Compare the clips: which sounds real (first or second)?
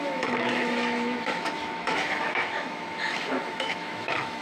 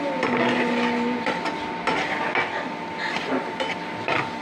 second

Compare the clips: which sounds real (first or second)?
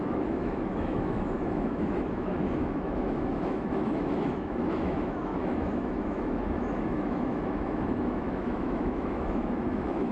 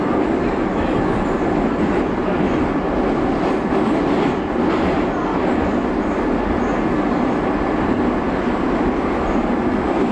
second